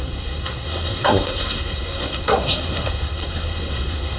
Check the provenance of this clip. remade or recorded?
remade